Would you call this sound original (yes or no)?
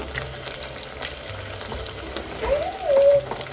yes